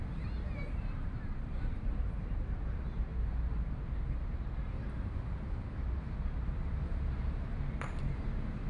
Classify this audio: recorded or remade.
remade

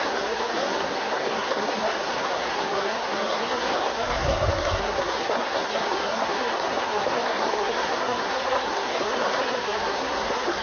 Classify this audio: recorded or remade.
remade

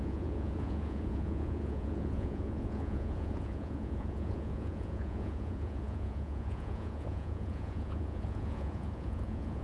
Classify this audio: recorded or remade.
remade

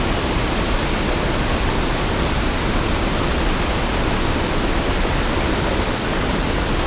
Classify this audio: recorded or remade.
recorded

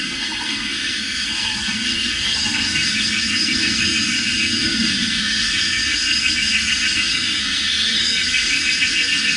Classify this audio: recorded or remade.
remade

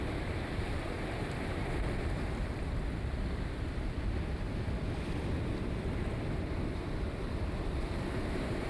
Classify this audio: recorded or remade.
remade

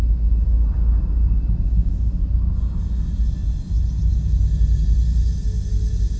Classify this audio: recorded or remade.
recorded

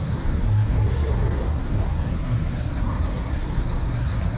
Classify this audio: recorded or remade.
remade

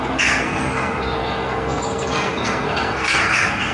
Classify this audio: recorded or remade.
remade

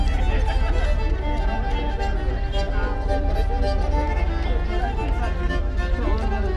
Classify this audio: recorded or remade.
recorded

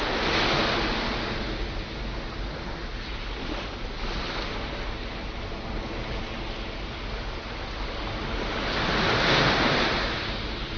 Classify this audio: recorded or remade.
recorded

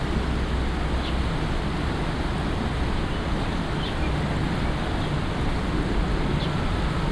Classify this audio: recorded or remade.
recorded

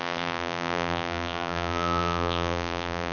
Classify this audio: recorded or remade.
remade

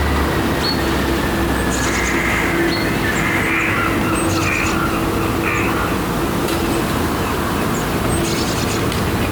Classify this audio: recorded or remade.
recorded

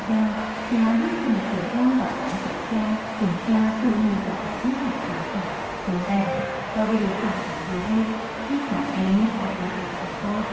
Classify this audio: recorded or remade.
remade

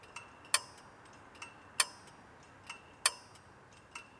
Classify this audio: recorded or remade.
recorded